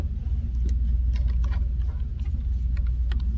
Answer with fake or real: real